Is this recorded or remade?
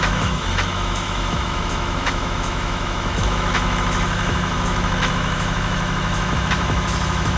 remade